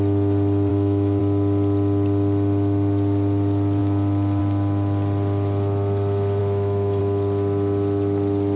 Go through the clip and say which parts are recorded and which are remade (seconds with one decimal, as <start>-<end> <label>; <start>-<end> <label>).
0.0-0.7 recorded; 0.7-1.2 remade; 1.2-6.4 recorded; 6.4-7.0 remade; 7.0-8.6 recorded